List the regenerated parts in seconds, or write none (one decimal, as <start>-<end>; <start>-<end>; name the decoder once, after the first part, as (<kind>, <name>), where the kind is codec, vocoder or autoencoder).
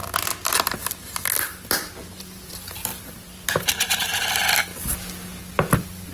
2.2-4.7 (vocoder, BigVGAN v2); 5.4-6.1